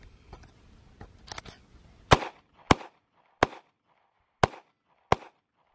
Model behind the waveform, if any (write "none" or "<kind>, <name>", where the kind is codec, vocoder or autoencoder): none